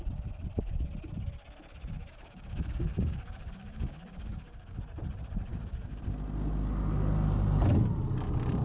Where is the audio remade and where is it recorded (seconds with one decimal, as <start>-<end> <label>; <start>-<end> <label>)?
0.0-2.0 recorded; 2.0-4.8 remade; 4.8-5.5 recorded; 5.5-6.0 remade; 6.0-8.6 recorded